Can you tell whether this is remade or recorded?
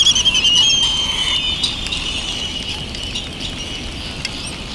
recorded